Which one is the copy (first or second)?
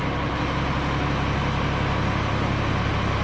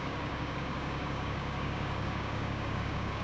second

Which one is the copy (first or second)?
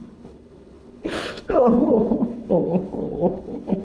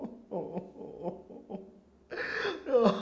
first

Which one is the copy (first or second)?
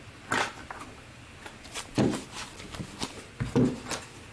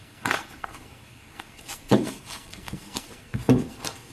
second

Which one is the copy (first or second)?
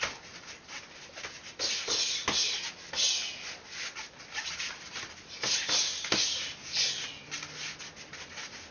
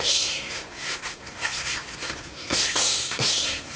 second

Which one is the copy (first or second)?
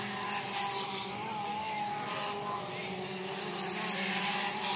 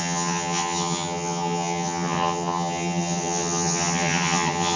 second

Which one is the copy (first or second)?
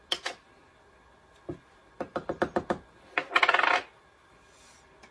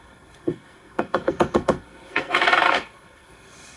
second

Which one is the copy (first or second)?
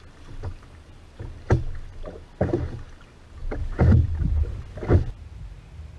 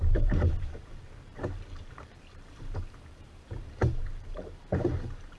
second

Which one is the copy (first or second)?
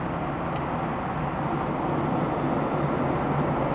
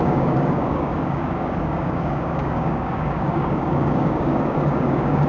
second